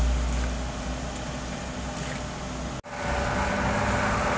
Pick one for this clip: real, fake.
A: real